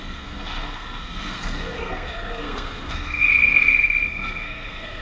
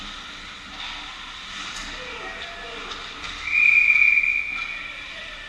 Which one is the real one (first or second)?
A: second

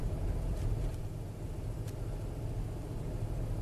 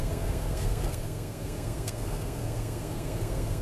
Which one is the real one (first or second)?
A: first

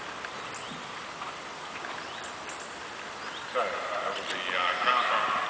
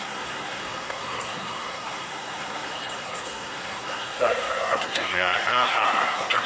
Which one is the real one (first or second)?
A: first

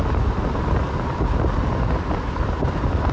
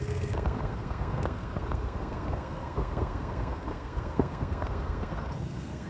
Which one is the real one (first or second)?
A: first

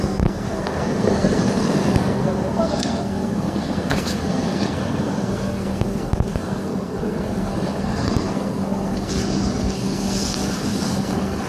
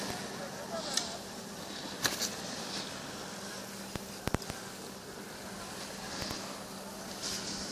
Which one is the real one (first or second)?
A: second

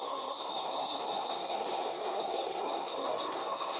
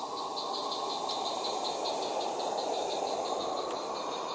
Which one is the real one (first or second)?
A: second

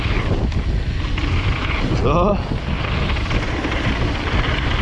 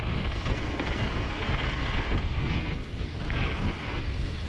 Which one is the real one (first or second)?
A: first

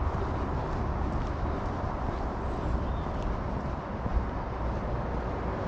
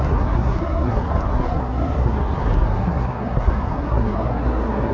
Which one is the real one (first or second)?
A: first